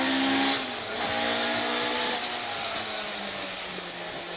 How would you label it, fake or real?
real